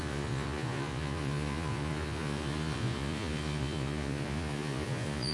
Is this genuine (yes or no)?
no